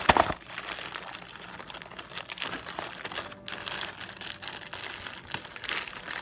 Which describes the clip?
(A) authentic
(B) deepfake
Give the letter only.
A